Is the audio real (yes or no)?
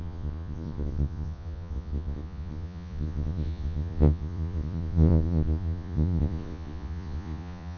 no